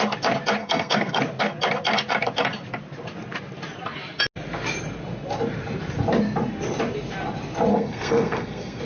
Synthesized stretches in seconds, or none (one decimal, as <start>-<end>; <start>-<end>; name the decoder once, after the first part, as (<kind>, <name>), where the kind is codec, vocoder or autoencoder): 0.6-1.2 (codec, SNAC); 7.7-8.8